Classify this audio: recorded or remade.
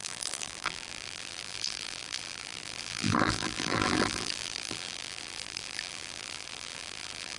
remade